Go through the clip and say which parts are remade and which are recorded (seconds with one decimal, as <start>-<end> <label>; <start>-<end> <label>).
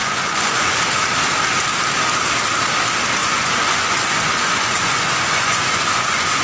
0.0-0.8 remade; 0.8-3.2 recorded; 3.2-6.4 remade